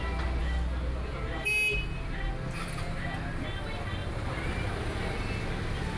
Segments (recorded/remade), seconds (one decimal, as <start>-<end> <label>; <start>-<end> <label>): 0.0-4.0 recorded; 4.0-5.3 remade; 5.3-6.0 recorded